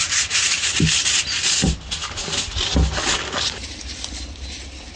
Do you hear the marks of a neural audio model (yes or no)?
no